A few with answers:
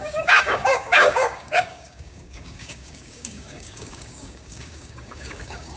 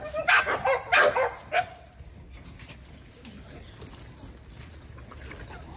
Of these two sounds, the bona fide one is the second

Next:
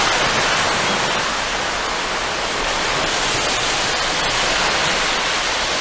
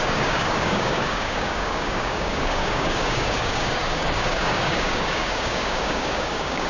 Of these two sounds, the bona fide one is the first